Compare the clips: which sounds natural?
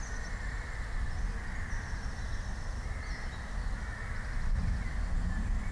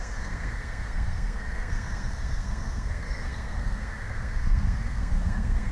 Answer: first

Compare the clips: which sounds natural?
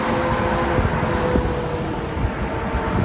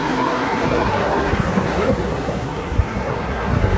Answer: first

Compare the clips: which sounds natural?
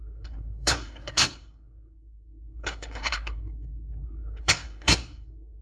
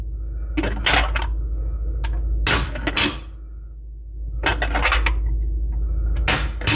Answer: second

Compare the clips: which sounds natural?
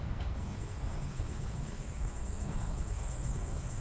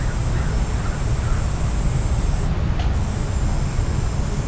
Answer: second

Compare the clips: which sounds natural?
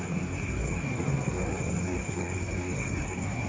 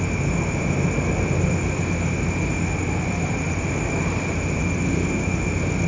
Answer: second